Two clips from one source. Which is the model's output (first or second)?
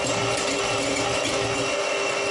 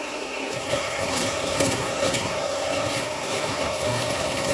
second